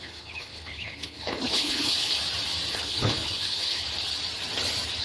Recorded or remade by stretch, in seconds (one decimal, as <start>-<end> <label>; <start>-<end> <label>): 0.0-2.2 remade; 2.2-2.7 recorded; 2.7-3.8 remade; 3.8-5.0 recorded